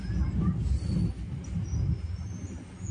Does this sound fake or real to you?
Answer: real